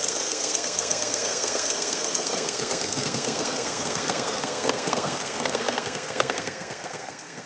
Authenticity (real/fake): fake